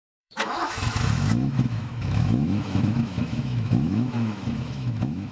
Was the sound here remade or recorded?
remade